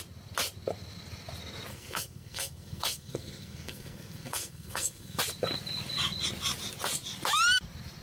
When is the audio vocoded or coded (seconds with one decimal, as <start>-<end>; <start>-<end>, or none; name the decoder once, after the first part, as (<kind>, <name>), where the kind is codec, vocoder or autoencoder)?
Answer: 1.7-5.2 (codec, SNAC)